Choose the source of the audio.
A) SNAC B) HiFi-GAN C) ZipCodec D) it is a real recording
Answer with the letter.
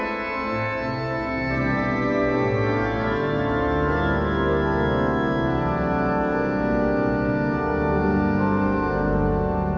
D